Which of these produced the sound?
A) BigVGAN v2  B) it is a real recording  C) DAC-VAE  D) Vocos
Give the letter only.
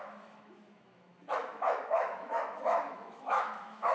C